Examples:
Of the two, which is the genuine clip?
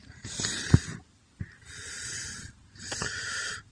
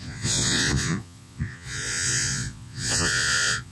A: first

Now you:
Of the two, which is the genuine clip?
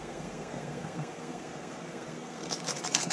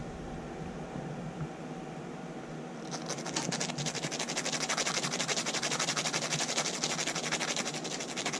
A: second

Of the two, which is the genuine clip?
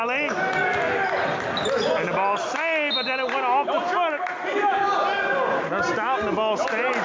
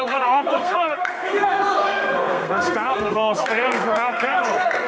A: first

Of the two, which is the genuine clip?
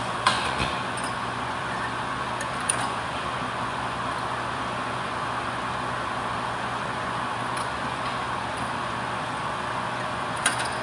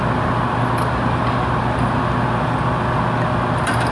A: second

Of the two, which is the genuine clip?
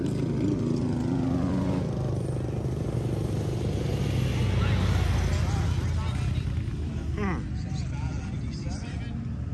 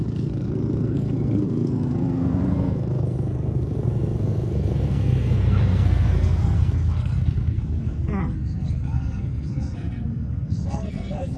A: first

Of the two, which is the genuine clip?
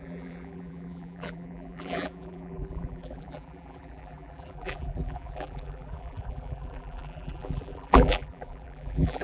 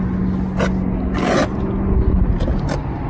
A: second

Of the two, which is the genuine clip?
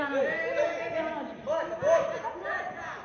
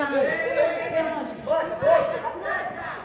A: first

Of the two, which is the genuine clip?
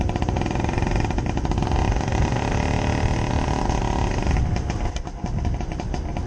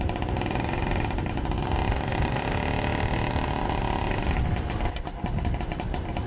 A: first